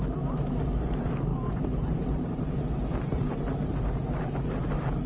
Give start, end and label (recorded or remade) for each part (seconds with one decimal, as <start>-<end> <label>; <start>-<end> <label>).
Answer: 0.0-1.3 recorded; 1.3-3.9 remade; 3.9-5.1 recorded